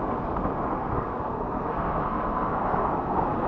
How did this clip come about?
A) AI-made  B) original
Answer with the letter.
A